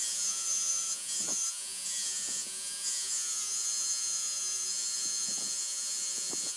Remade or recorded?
remade